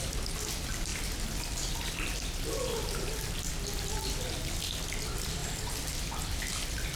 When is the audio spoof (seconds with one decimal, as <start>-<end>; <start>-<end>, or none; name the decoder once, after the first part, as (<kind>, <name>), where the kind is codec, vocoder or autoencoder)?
5.4-5.9 (vocoder, BigVGAN v2)